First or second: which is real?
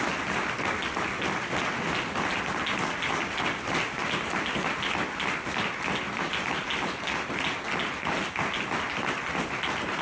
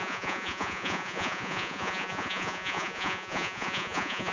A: first